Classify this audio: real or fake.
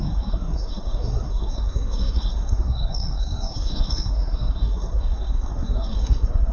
fake